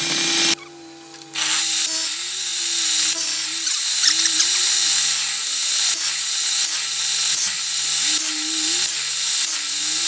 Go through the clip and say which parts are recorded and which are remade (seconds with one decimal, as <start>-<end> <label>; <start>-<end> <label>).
0.0-10.1 recorded